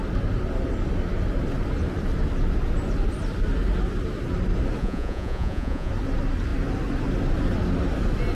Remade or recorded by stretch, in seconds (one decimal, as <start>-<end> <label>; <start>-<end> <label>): 0.0-4.8 recorded; 4.8-5.9 remade; 5.9-8.3 recorded